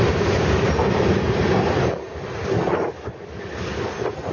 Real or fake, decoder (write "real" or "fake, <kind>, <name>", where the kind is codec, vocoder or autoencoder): fake, vocoder, BigVGAN v2